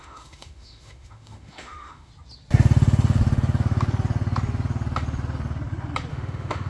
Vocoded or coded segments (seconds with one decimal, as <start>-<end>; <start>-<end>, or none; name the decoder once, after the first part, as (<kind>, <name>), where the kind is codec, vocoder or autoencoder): 0.0-2.1 (autoencoder, DAC-VAE); 6.1-6.7